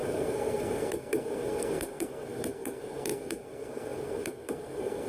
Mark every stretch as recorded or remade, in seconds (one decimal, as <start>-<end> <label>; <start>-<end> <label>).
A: 0.0-5.1 remade